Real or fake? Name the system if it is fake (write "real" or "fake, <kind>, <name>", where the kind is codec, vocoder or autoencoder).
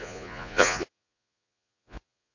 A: fake, vocoder, Vocos